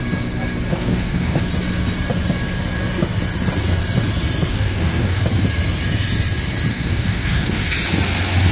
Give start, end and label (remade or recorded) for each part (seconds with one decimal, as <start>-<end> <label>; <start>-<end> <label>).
0.0-0.7 recorded; 0.7-1.4 remade; 1.4-4.5 recorded; 4.5-5.2 remade; 5.2-6.7 recorded; 6.7-7.7 remade; 7.7-8.5 recorded